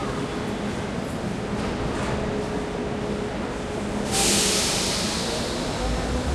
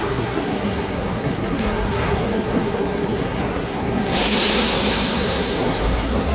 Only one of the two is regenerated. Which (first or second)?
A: second